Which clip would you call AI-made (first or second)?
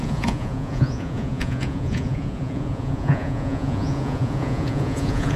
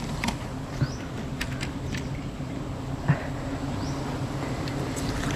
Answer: first